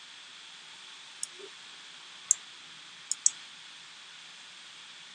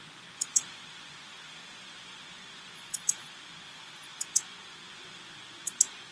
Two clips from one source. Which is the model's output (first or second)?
second